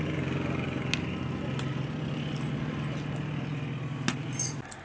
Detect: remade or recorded recorded